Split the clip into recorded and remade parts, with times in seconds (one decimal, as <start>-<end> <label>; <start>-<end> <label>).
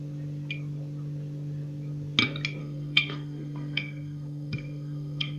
0.0-2.6 recorded; 2.6-5.4 remade